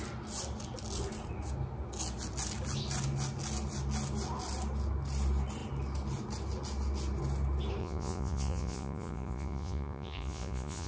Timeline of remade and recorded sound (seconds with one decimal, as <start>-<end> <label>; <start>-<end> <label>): 0.0-7.8 recorded; 7.8-10.9 remade